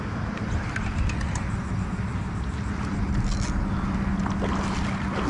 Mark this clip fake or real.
real